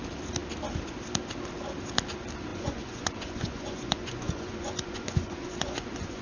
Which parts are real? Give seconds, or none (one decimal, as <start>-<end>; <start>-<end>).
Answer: 0.0-2.5